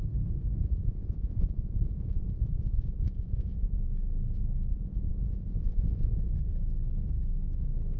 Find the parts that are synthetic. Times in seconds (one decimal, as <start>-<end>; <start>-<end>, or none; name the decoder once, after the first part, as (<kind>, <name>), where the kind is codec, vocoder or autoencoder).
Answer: 0.6-3.8 (vocoder, Vocos); 4.7-6.2